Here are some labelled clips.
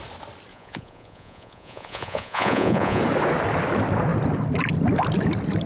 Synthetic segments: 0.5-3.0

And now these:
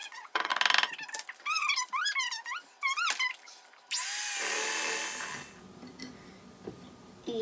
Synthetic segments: 0.0-0.5

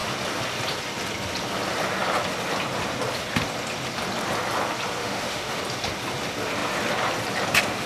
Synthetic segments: 5.0-5.6